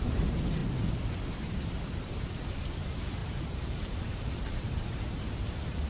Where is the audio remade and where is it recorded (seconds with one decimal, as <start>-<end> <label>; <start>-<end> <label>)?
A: 0.0-0.6 remade; 0.6-2.4 recorded; 2.4-5.9 remade